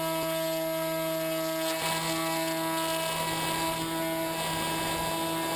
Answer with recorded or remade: recorded